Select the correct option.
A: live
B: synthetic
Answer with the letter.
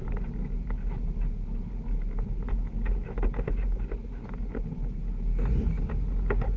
A